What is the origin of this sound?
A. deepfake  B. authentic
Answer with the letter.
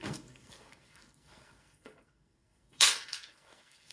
A